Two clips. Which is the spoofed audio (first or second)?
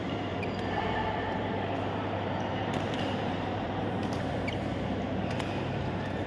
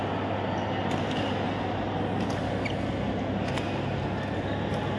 first